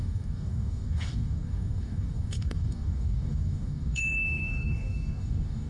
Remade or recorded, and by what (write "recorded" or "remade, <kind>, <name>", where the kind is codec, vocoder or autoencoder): remade, codec, DAC